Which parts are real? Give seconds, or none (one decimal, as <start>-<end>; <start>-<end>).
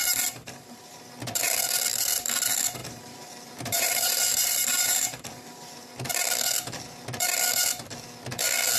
1.1-2.8; 6.1-8.8